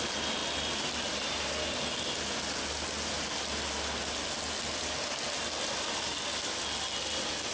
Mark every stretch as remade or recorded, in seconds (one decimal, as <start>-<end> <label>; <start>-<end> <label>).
0.0-7.5 recorded

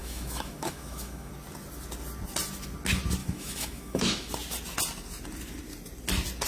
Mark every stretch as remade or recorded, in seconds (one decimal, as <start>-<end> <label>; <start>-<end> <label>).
0.0-1.3 remade; 1.3-3.2 recorded; 3.2-4.3 remade; 4.3-6.5 recorded